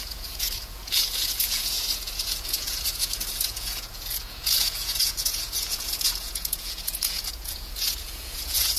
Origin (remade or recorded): remade